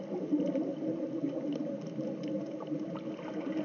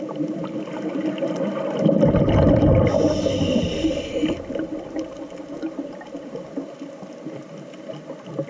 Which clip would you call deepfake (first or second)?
second